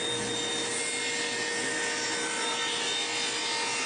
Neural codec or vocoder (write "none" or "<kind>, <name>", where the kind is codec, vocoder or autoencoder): none